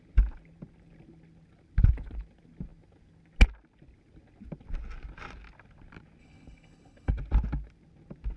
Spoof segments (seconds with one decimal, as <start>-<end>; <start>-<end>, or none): 6.2-7.1